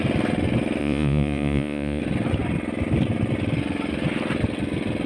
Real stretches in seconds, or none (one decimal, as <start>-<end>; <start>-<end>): 0.0-0.8; 2.0-5.1